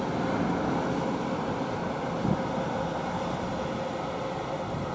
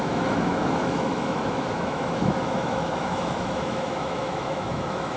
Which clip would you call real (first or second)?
first